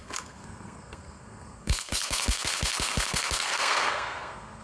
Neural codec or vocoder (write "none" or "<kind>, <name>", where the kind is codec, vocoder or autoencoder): codec, SNAC